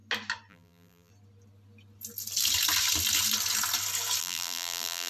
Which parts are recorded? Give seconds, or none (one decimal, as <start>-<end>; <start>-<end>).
0.0-0.5; 1.1-4.2